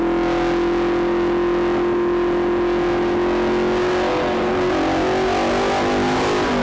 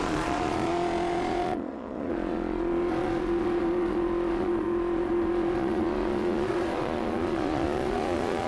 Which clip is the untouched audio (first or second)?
first